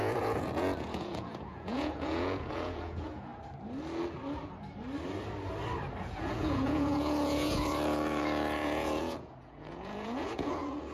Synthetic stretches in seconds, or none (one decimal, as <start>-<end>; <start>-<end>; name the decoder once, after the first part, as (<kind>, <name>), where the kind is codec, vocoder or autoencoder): 0.0-3.3 (vocoder, Vocos); 6.0-10.9